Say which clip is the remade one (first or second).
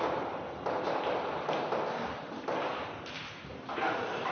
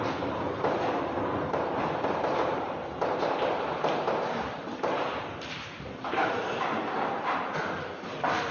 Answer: second